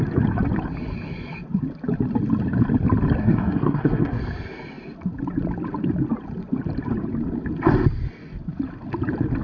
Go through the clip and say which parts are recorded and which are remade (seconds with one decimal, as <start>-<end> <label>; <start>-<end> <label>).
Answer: 0.0-3.2 recorded; 3.2-4.2 remade; 4.2-9.4 recorded